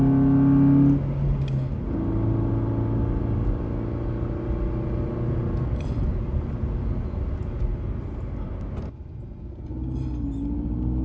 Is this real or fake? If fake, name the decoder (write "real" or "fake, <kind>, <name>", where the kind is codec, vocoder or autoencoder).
real